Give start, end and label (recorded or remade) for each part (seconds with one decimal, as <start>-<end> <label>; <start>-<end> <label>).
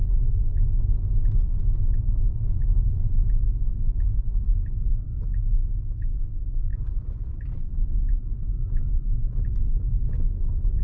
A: 0.0-10.8 recorded